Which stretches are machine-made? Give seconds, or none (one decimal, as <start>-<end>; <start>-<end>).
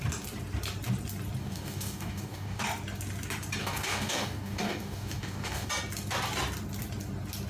1.4-2.6; 3.6-5.7